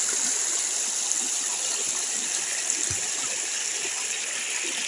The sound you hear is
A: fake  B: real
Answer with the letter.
B